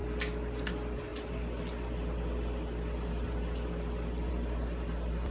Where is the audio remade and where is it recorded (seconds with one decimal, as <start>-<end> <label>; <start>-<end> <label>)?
0.0-5.3 recorded